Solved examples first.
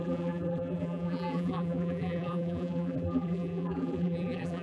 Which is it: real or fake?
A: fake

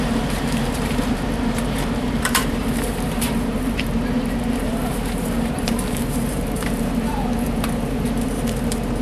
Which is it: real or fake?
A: fake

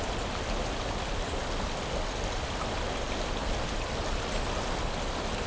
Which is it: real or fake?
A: real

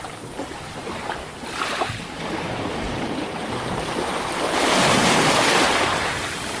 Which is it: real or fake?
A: fake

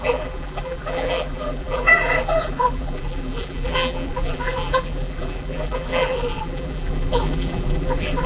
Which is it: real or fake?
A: fake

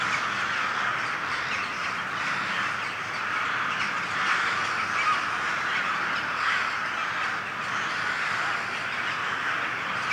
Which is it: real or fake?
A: real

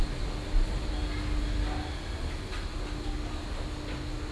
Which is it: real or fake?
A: real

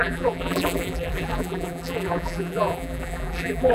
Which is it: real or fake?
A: fake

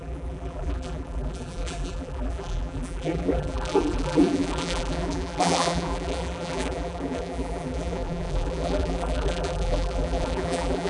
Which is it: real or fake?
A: fake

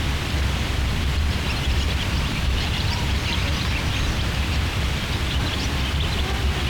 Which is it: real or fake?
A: fake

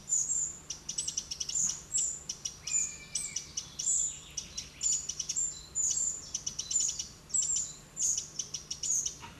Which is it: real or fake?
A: fake